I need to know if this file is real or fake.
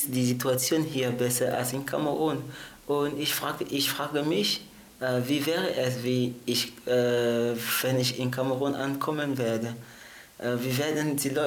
real